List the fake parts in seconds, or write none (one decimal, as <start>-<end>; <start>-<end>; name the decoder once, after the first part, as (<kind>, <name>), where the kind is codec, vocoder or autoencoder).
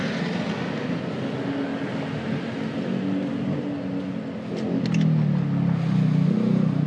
none